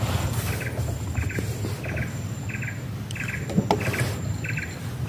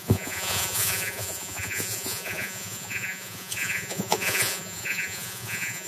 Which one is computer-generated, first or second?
second